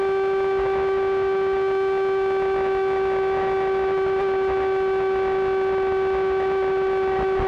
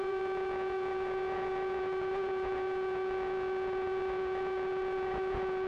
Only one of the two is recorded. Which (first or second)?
first